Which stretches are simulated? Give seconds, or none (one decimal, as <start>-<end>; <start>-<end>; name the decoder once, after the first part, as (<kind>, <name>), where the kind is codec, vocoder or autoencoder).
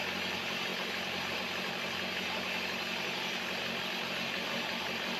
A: none